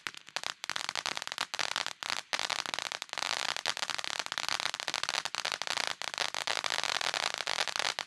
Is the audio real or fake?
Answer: real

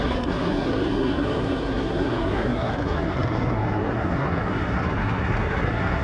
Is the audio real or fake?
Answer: fake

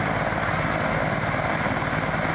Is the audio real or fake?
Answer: real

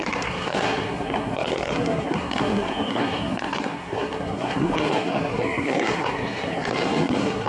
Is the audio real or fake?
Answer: fake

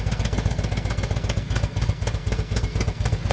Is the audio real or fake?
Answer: fake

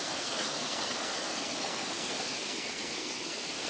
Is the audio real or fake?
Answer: fake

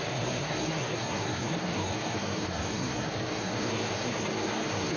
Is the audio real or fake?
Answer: fake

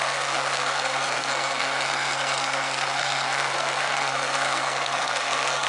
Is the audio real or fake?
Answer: fake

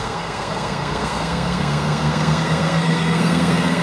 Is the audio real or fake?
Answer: fake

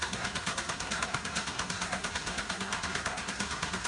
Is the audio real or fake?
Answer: fake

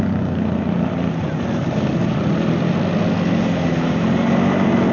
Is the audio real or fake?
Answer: real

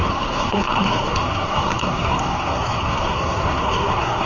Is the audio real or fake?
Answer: fake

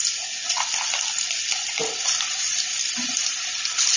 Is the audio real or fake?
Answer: real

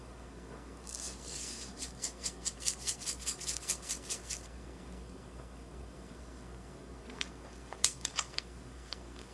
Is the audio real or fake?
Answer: fake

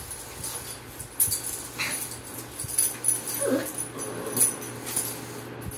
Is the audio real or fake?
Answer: real